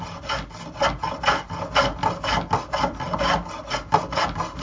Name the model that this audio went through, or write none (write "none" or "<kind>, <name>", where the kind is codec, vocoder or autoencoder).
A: none